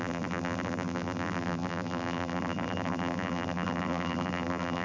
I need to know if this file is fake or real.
fake